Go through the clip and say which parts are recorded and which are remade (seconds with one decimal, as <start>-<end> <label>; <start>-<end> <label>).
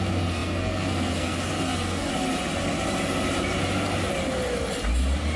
0.0-2.1 remade; 2.1-5.4 recorded